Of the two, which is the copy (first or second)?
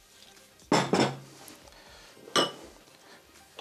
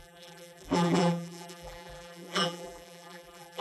second